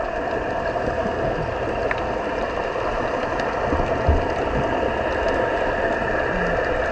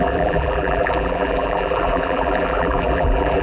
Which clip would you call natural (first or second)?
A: first